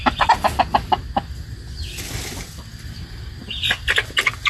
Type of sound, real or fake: real